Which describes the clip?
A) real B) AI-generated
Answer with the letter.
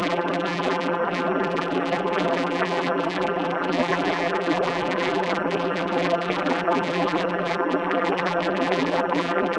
B